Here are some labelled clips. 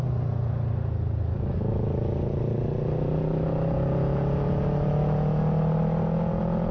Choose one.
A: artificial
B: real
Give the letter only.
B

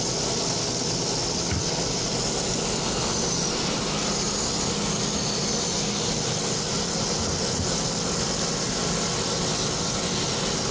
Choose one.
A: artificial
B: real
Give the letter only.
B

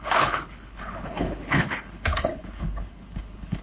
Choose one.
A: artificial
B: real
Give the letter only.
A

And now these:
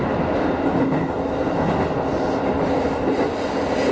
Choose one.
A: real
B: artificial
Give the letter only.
A